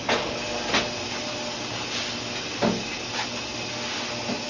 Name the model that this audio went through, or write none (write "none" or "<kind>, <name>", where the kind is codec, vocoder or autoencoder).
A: none